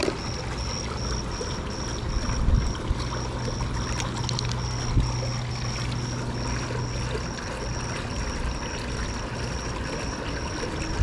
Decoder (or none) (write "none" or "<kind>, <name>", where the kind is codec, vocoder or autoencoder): none